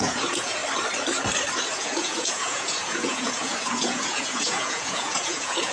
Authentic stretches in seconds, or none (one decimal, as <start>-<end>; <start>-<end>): 0.6-1.7